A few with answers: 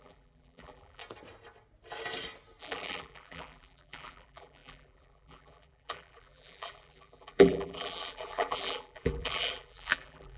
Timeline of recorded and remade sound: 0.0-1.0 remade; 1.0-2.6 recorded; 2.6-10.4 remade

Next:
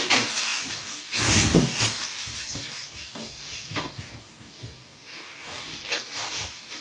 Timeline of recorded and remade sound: 0.0-6.8 remade

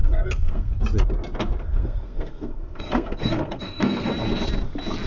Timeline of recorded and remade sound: 0.0-0.7 remade; 0.7-1.6 recorded; 1.6-4.1 remade; 4.1-5.1 recorded

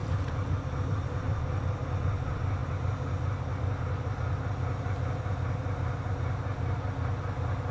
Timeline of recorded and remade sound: 0.0-1.4 remade; 1.4-7.7 recorded

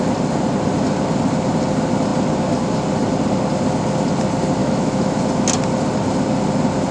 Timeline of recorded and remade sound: 0.0-4.6 recorded; 4.6-5.2 remade; 5.2-6.9 recorded